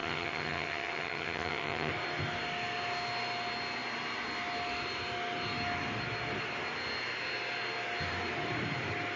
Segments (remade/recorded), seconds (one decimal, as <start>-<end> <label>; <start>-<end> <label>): 0.0-1.9 remade; 1.9-9.2 recorded